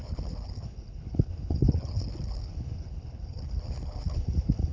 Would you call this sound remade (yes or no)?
yes